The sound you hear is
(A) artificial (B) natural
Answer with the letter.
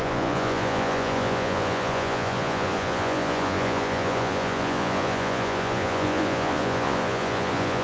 A